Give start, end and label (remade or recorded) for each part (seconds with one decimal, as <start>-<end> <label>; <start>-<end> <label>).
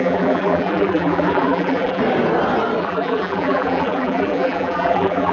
0.0-2.0 remade; 2.0-2.8 recorded; 2.8-5.3 remade